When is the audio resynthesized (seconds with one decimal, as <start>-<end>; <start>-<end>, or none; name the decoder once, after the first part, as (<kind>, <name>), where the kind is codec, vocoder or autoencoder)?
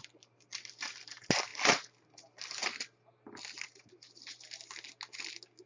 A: none